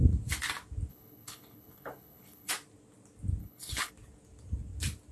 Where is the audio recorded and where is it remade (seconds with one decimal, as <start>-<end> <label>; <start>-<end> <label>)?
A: 0.0-0.9 recorded; 0.9-2.5 remade; 2.5-3.4 recorded; 3.4-3.9 remade; 3.9-5.1 recorded